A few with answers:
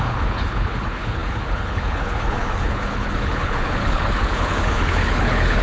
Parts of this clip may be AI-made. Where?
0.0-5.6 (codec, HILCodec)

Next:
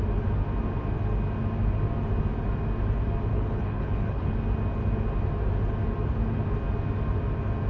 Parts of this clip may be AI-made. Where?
3.3-4.3 (codec, HILCodec)

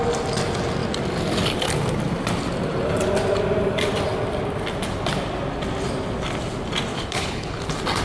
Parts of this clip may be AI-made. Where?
6.9-7.6 (codec, HILCodec)

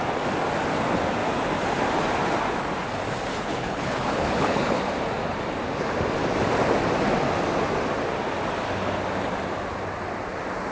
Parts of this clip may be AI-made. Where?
3.3-4.8 (codec, HILCodec)

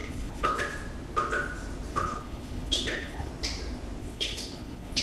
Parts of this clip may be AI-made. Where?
0.0-0.6 (codec, HILCodec); 1.9-3.3; 4.0-5.0

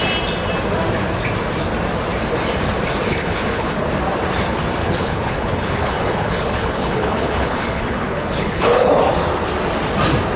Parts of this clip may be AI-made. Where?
3.1-3.9 (codec, HILCodec); 4.8-8.9